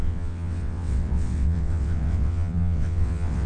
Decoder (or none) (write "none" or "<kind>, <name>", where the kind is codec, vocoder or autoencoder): vocoder, WaveNeXt